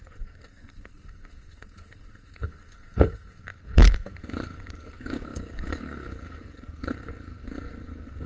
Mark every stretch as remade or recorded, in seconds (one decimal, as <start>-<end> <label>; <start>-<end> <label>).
0.0-8.3 remade